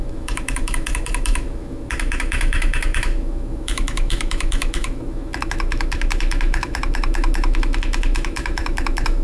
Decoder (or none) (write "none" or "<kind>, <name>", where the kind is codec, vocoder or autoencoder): autoencoder, DAC-VAE